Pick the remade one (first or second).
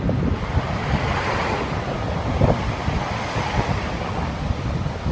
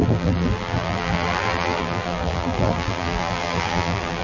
second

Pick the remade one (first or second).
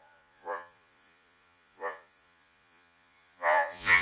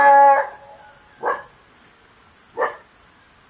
first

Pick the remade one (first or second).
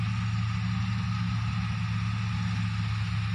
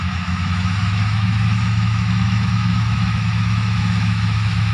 second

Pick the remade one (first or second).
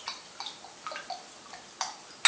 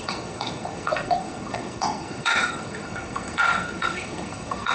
second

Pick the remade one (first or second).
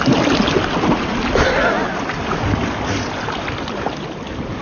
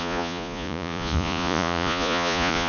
second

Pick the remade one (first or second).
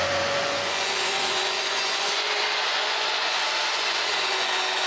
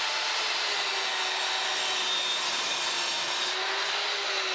first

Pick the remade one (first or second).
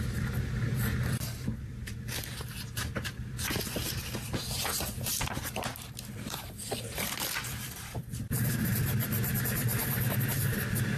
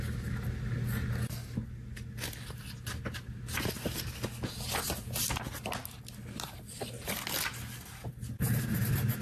first